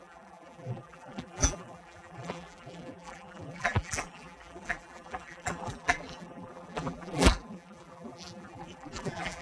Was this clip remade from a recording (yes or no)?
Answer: yes